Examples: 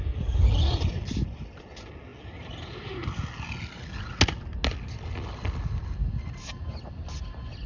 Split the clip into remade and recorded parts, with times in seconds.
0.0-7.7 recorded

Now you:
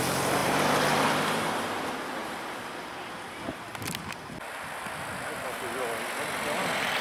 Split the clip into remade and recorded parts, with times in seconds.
0.0-0.4 recorded; 0.4-1.2 remade; 1.2-2.2 recorded; 2.2-4.8 remade; 4.8-7.0 recorded

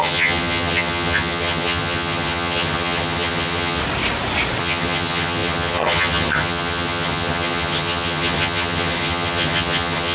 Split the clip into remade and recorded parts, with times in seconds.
0.0-3.8 remade; 3.8-4.6 recorded; 4.6-10.1 remade

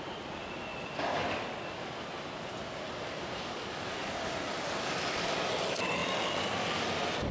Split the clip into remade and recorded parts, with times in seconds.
0.0-7.3 recorded

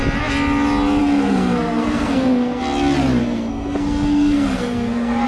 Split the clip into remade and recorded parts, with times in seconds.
0.0-1.0 recorded; 1.0-2.6 remade; 2.6-3.2 recorded; 3.2-5.3 remade